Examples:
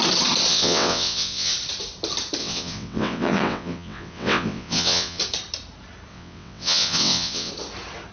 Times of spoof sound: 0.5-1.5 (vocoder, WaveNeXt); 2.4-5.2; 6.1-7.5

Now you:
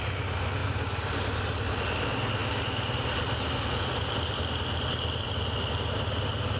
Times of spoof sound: none

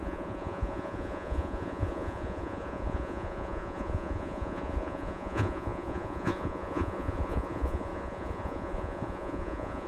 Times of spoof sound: 0.0-9.9 (vocoder, Vocos)

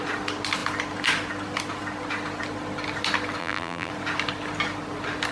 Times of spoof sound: 3.4-3.9 (vocoder, BigVGAN v2)